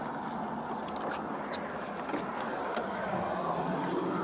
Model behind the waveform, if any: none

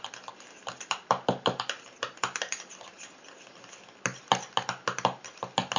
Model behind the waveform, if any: none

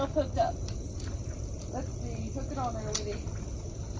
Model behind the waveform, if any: none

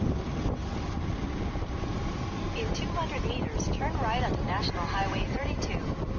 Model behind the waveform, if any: none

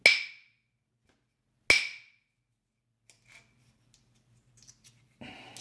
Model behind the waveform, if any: none